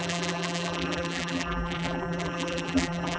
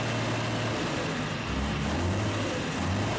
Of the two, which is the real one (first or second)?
second